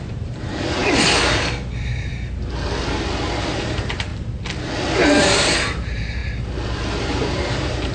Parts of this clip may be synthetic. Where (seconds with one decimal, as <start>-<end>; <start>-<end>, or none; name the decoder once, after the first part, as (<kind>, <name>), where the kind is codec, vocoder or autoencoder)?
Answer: 0.0-0.8 (vocoder, BigVGAN v2); 1.7-2.1; 3.4-4.1; 5.2-6.2; 7.0-7.9